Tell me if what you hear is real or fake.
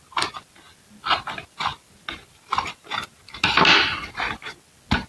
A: real